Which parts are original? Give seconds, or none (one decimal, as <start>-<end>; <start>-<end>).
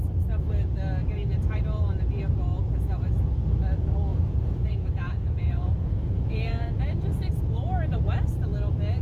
0.0-4.1; 7.3-9.0